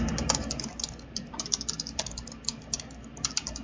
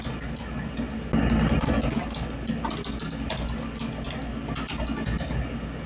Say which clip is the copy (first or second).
first